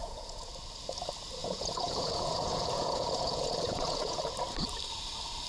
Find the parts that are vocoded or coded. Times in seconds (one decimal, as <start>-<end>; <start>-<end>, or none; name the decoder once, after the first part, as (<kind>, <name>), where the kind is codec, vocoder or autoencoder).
0.0-0.5 (vocoder, Vocos); 1.4-4.2